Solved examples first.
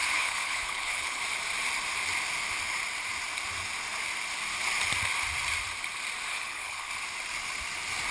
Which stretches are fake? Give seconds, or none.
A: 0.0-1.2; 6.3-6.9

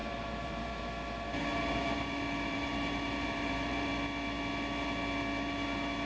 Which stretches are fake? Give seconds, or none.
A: 0.0-0.8; 1.5-3.9

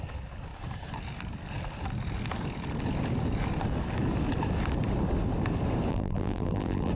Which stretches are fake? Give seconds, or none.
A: 5.9-6.9

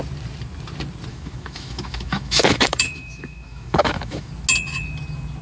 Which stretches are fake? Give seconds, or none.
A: 1.1-4.3